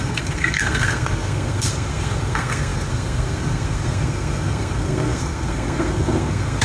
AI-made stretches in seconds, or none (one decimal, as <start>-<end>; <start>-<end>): 0.0-6.6

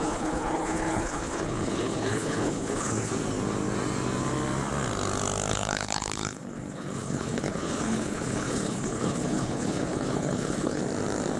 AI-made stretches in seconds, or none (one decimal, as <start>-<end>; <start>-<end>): 0.0-3.1; 5.5-10.8